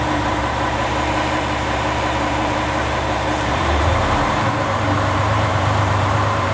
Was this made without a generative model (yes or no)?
no